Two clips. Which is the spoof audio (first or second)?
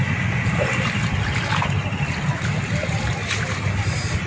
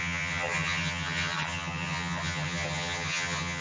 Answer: second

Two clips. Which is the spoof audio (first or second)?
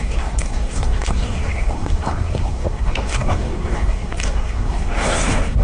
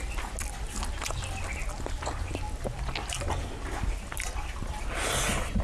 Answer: first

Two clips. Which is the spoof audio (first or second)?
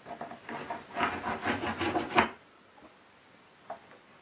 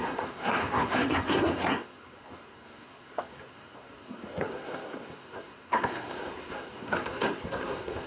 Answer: second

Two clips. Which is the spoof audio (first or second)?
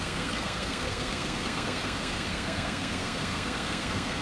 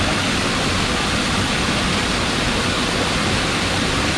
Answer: first